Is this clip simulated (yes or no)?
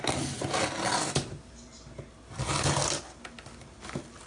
no